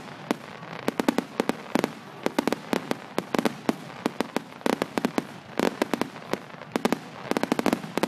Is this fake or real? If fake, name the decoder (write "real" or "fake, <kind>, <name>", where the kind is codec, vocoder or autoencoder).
real